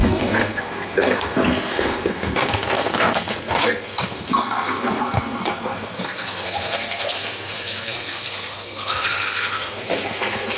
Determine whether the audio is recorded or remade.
remade